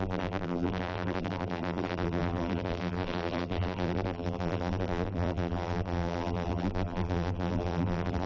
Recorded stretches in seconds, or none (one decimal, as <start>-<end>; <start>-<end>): none